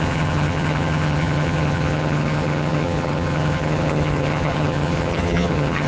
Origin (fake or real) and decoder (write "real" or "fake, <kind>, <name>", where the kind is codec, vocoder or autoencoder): fake, vocoder, HiFi-GAN